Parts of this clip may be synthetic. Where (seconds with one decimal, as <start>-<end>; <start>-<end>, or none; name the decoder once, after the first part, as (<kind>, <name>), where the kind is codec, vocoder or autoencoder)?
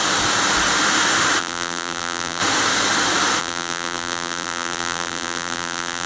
1.4-2.4 (vocoder, BigVGAN v2); 3.4-6.1